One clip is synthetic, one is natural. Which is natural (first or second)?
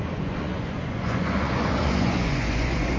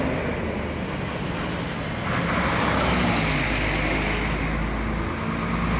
second